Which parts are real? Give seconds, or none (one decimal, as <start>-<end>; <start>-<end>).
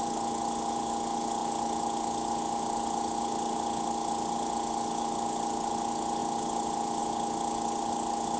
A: 0.0-8.4